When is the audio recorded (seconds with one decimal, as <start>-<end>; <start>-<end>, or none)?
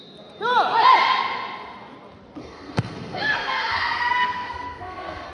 0.0-2.4